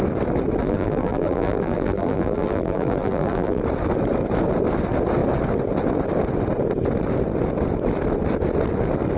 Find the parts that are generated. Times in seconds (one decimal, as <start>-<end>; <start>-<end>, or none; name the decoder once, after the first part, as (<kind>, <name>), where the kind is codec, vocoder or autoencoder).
0.6-3.6 (vocoder, BigVGAN v2)